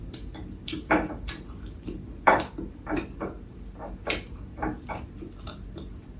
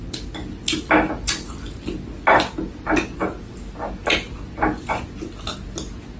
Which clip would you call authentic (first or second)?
second